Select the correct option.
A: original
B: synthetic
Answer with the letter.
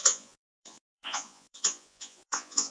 B